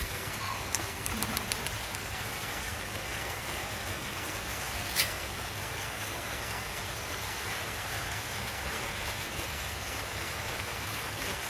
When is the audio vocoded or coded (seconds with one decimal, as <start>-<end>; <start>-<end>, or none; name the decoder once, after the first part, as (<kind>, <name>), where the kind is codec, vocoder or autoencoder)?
0.0-1.1 (codec, SNAC); 1.8-11.5